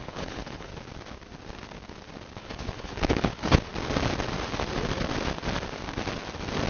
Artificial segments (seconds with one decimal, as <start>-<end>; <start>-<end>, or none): 0.0-0.7; 2.4-3.7